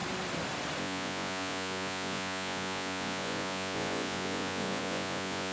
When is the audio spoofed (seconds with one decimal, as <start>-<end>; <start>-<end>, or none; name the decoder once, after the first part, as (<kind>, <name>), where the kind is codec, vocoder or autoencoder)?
0.8-5.5 (vocoder, Vocos)